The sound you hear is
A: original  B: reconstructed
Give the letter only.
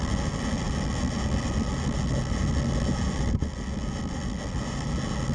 A